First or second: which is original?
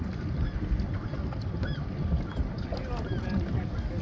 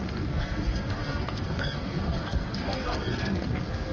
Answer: first